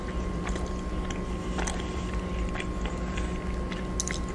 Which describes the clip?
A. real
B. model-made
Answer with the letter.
A